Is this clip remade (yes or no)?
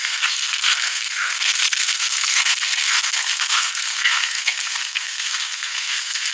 yes